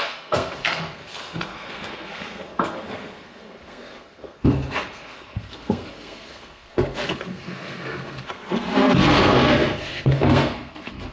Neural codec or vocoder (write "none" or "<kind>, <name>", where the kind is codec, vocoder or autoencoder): codec, SNAC